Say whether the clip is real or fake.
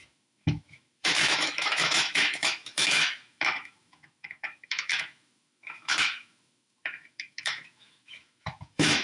fake